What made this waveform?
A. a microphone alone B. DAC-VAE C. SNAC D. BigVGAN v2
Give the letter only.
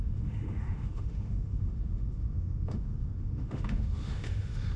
B